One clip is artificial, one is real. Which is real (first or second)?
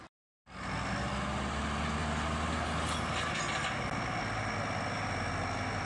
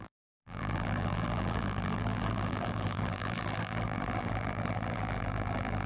first